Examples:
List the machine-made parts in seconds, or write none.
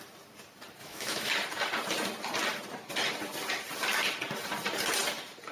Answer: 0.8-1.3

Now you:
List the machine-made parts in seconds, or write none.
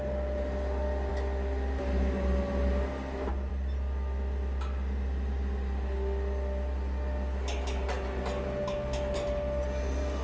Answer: none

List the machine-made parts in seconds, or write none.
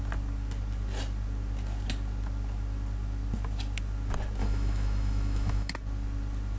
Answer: 4.4-5.7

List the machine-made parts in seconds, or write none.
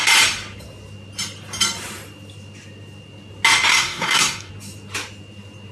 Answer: 3.7-4.5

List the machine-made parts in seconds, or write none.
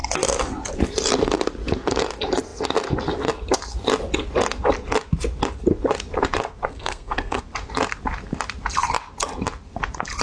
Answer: 6.7-7.4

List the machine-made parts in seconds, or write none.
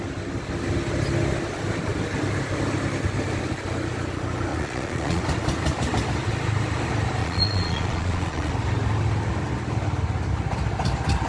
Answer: 4.5-5.2; 7.2-8.5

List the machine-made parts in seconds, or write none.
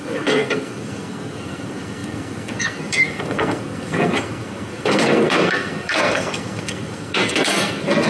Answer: 0.0-8.1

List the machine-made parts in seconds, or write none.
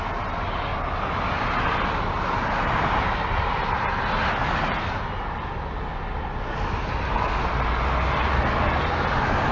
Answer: none